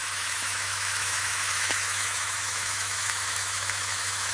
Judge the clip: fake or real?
fake